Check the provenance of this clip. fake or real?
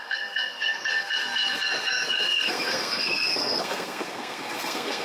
fake